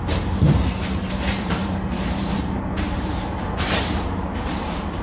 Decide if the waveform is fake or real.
fake